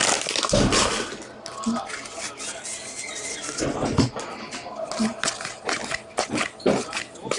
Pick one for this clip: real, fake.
real